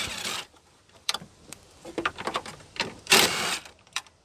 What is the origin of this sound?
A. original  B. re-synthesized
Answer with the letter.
B